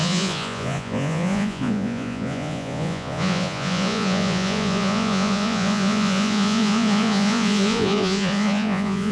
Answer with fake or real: fake